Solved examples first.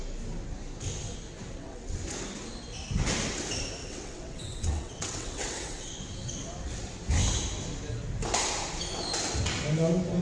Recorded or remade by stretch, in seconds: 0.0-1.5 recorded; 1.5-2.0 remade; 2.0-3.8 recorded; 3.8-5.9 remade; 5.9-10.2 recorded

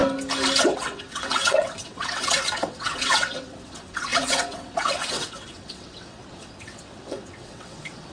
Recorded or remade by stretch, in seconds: 0.0-0.6 recorded; 0.6-8.1 remade

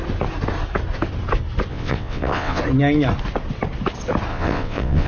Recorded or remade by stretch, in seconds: 0.0-1.7 recorded; 1.7-2.6 remade; 2.6-4.3 recorded; 4.3-5.1 remade